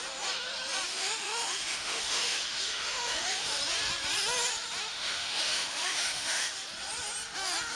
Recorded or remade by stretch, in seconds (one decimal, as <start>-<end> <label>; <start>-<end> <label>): 0.0-0.9 recorded; 0.9-3.6 remade; 3.6-4.9 recorded; 4.9-6.5 remade; 6.5-7.8 recorded